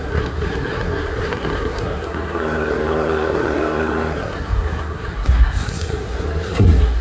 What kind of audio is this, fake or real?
fake